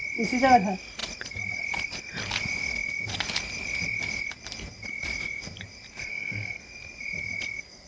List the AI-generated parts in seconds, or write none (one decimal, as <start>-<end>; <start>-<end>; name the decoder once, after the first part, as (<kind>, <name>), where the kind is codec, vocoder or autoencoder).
6.1-6.6 (codec, SNAC)

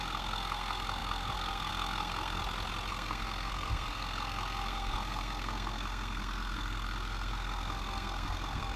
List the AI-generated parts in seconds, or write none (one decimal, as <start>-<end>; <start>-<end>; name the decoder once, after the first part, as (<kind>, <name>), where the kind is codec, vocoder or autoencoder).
0.0-2.4 (codec, SNAC); 2.9-8.8

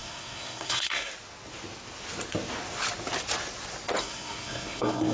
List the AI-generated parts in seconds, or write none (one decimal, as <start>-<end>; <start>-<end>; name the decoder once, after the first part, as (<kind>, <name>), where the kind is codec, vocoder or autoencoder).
0.0-1.1 (codec, SNAC); 4.0-5.1